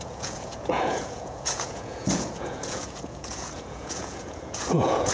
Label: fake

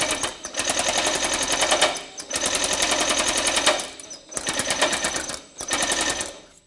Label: real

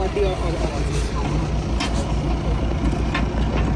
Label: real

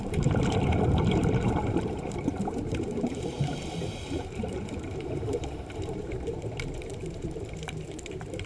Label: fake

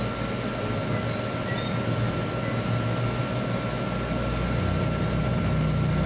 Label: real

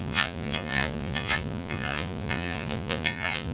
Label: fake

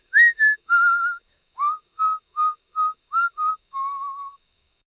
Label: fake